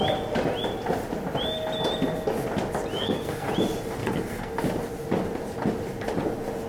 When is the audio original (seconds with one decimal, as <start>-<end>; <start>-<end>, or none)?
0.0-3.0; 3.5-4.0; 4.6-6.7